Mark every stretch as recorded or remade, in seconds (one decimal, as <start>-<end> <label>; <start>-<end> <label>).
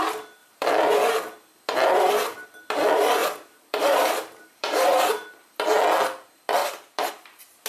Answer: 0.0-0.4 recorded; 0.4-0.9 remade; 0.9-3.2 recorded; 3.2-5.1 remade; 5.1-6.6 recorded; 6.6-7.1 remade; 7.1-7.7 recorded